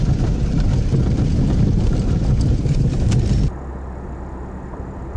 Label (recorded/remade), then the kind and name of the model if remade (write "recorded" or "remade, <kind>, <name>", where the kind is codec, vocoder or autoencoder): recorded